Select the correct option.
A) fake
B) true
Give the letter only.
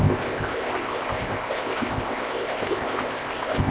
A